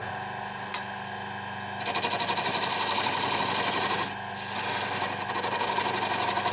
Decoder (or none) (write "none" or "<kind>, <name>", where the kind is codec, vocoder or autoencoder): none